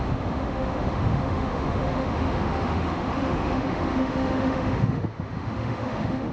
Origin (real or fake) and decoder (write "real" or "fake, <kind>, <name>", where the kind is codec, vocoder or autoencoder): fake, autoencoder, DAC-VAE